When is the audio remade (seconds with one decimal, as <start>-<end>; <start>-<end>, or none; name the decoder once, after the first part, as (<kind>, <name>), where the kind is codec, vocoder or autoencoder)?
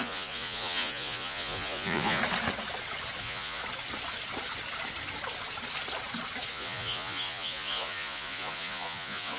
0.0-2.2 (vocoder, Vocos); 3.2-3.6; 6.5-9.4